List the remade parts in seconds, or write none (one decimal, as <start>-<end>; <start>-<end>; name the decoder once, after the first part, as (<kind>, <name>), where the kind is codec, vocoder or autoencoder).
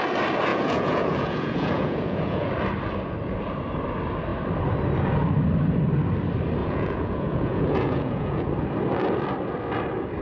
0.5-2.5 (vocoder, Vocos); 6.6-8.5